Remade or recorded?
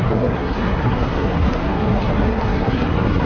remade